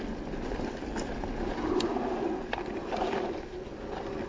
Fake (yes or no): no